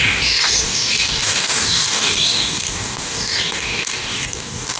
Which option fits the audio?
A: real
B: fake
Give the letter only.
B